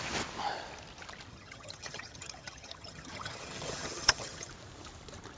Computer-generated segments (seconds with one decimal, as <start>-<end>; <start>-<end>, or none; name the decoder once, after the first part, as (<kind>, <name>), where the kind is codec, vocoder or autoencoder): 1.3-4.5 (vocoder, HiFi-GAN)